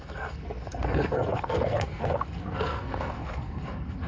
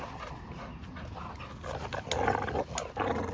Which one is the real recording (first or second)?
second